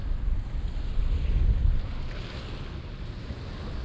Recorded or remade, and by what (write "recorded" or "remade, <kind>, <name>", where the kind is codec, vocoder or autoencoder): recorded